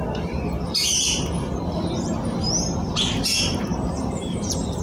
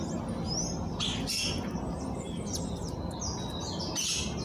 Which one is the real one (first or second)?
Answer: second